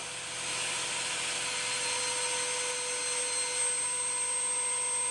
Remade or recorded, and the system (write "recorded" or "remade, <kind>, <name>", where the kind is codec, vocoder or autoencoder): recorded